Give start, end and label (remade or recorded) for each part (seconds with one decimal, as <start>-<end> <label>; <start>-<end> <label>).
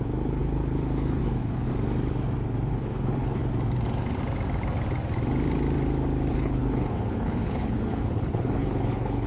0.0-1.7 remade; 1.7-2.7 recorded; 2.7-3.4 remade; 3.4-6.3 recorded; 6.3-9.3 remade